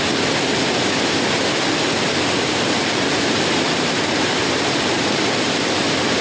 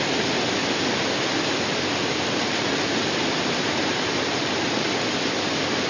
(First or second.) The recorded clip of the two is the second